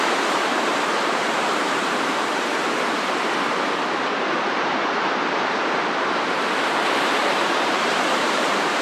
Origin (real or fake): fake